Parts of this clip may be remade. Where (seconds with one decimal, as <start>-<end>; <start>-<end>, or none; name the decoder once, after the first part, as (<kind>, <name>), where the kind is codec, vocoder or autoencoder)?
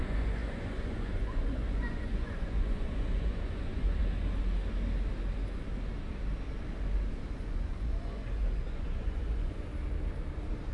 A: 0.0-4.0 (vocoder, Vocos); 7.4-9.7